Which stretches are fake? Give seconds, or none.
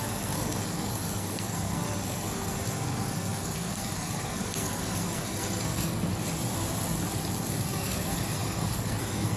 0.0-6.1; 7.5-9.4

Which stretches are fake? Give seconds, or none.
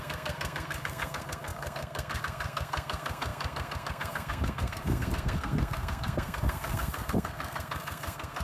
0.0-8.4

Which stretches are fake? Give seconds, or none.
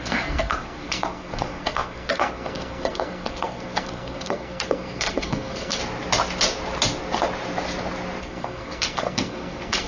0.0-5.8; 8.2-9.9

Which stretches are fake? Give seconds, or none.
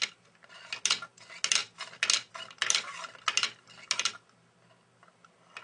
none